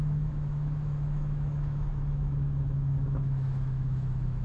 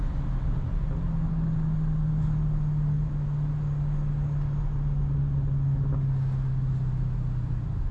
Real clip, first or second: second